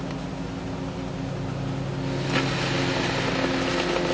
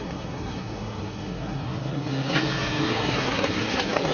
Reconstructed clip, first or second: second